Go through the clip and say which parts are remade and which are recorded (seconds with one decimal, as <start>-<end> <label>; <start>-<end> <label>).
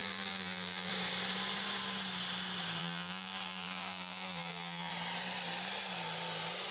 0.0-0.9 remade; 0.9-2.8 recorded; 2.8-4.9 remade; 4.9-6.7 recorded